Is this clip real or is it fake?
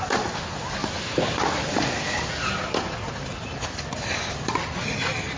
real